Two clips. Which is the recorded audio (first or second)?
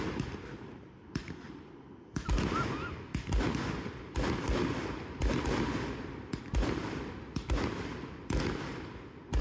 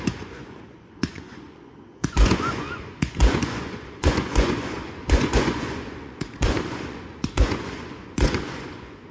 first